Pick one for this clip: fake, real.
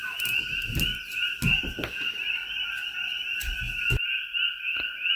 real